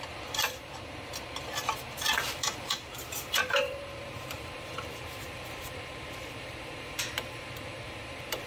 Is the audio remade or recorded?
remade